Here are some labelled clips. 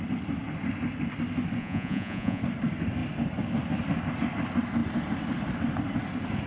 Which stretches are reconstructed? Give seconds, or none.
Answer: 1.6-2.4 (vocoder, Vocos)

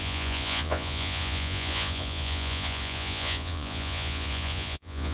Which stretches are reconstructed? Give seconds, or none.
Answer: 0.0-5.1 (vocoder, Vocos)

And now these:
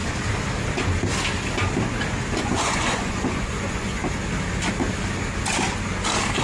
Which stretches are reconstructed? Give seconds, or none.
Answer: 2.4-4.0 (vocoder, Vocos)

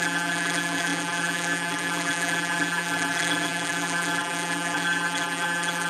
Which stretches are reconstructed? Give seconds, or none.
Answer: 0.0-5.9 (vocoder, BigVGAN v2)